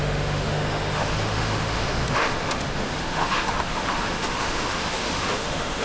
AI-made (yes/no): yes